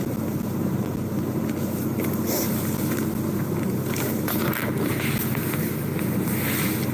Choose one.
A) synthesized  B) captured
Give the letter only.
B